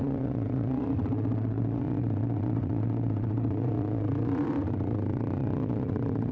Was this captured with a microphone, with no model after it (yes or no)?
no